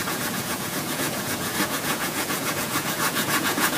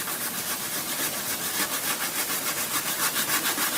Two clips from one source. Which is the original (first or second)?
second